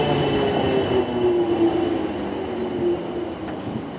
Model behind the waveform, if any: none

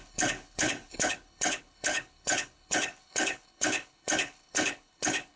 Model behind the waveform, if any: codec, HILCodec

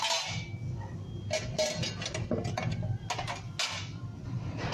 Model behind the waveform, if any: none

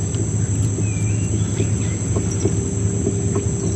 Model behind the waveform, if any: none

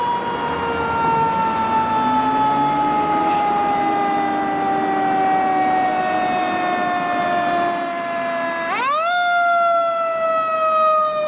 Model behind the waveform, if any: none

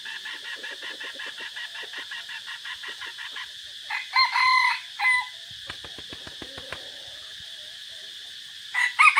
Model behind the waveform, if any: none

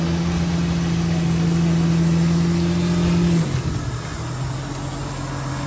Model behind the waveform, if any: none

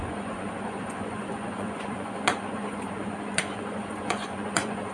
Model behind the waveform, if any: vocoder, Vocos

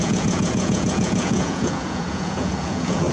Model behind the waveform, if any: vocoder, Vocos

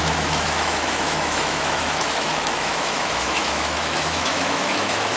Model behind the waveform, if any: autoencoder, DAC-VAE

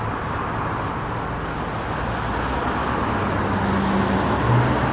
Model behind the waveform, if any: none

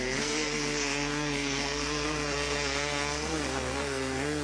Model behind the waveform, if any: codec, SNAC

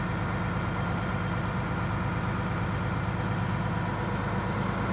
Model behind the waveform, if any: none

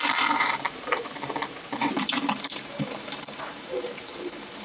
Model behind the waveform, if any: vocoder, BigVGAN v2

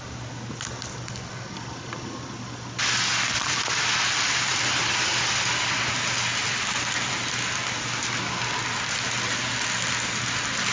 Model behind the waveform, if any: none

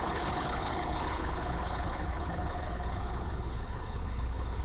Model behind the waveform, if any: codec, HILCodec